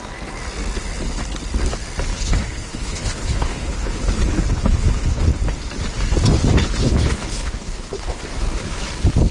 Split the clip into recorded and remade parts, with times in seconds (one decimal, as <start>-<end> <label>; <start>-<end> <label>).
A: 0.0-2.1 recorded; 2.1-4.0 remade; 4.0-4.5 recorded; 4.5-5.2 remade; 5.2-6.6 recorded; 6.6-8.2 remade; 8.2-9.3 recorded